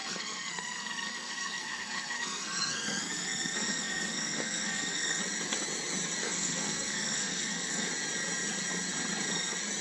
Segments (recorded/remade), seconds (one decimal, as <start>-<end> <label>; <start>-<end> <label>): 0.0-5.2 remade; 5.2-6.2 recorded; 6.2-7.9 remade; 7.9-9.8 recorded